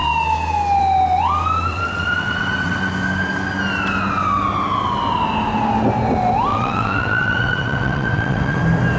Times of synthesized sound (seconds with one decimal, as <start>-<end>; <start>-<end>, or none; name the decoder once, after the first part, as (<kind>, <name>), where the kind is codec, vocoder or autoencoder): 1.7-2.9 (vocoder, WaveNeXt); 6.5-8.6